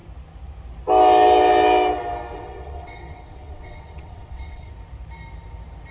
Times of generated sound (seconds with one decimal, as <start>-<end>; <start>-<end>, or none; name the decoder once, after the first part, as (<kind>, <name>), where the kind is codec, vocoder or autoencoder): 2.3-4.7 (vocoder, WaveNeXt)